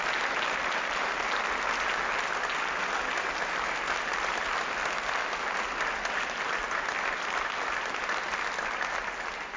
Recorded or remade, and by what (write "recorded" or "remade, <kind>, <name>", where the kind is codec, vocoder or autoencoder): recorded